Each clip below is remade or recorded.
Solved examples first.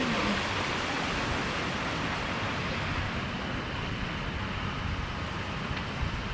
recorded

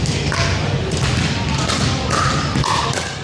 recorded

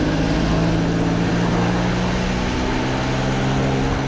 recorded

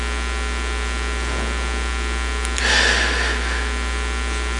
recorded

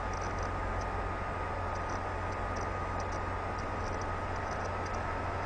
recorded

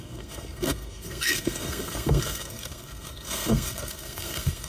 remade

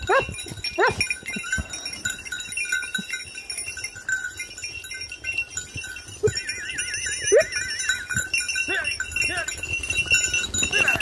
recorded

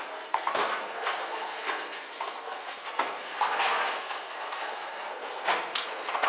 remade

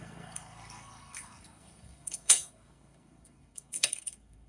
remade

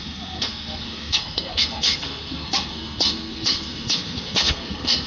remade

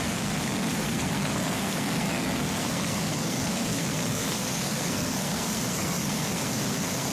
remade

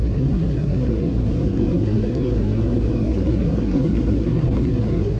remade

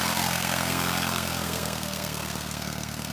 remade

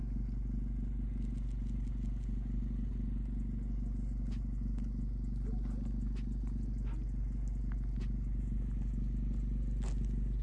recorded